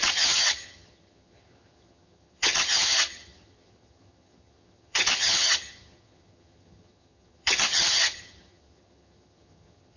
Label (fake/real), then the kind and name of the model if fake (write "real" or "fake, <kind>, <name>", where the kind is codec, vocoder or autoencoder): fake, vocoder, HiFi-GAN